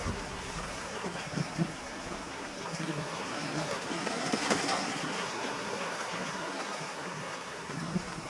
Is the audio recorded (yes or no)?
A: no